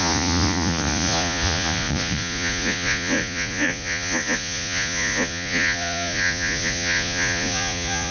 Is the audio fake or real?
fake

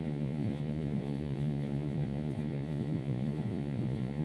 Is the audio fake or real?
fake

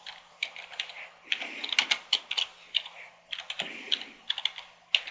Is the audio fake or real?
real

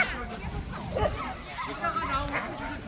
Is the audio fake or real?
real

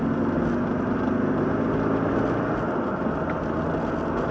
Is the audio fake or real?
real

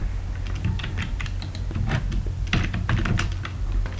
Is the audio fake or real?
real